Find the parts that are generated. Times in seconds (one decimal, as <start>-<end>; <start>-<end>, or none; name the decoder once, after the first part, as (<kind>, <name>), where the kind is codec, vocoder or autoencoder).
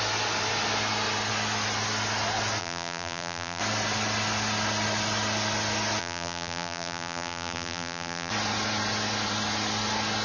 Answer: 2.6-3.6 (vocoder, BigVGAN v2); 6.0-8.3